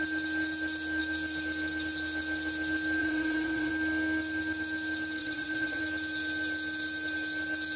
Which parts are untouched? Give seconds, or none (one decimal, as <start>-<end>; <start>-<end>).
0.0-3.0; 3.7-5.2; 5.8-7.8